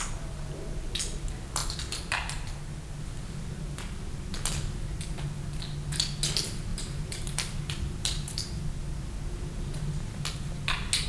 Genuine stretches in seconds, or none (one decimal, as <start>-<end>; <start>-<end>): 0.0-6.7; 8.6-11.1